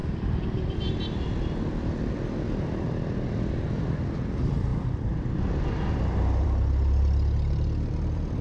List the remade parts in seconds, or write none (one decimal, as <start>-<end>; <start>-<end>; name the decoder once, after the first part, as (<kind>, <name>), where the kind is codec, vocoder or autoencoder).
4.3-8.4 (vocoder, BigVGAN v2)